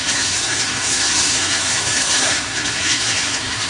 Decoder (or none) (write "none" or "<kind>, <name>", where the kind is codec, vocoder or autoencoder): codec, SNAC